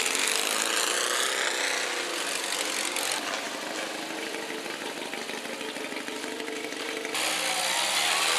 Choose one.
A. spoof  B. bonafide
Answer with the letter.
B